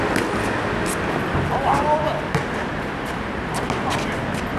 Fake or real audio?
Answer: real